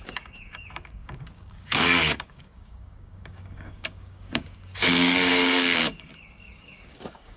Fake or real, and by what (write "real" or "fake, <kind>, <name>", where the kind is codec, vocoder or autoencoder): fake, codec, DAC